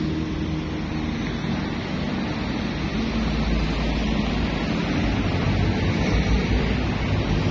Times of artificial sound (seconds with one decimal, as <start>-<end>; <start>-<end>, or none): none